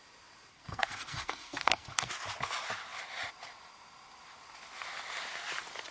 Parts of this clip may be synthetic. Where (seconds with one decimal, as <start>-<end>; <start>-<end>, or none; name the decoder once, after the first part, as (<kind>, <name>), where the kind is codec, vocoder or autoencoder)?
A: 0.5-2.1 (codec, SNAC)